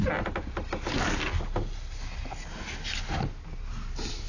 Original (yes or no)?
yes